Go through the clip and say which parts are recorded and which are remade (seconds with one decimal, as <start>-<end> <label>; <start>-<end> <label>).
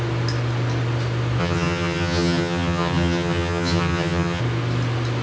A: 0.0-1.4 recorded; 1.4-4.4 remade; 4.4-5.2 recorded